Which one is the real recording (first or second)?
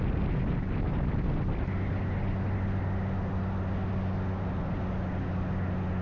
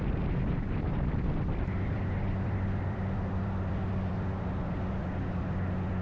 first